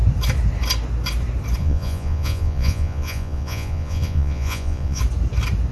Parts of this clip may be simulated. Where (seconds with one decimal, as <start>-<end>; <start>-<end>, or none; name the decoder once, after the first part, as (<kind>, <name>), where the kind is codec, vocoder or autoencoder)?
1.6-5.0 (vocoder, Vocos)